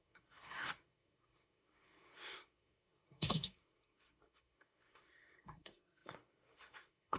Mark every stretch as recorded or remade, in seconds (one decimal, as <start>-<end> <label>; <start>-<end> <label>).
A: 0.0-7.2 remade